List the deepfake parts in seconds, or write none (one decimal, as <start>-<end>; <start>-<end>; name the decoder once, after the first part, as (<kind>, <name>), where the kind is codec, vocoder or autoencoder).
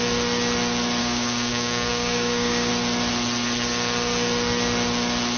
1.0-2.7 (codec, DAC)